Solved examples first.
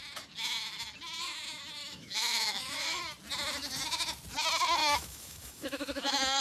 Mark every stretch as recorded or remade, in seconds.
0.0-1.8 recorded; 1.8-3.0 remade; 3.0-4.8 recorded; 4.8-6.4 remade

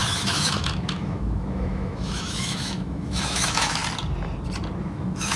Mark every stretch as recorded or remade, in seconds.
0.0-3.8 remade; 3.8-4.8 recorded; 4.8-5.4 remade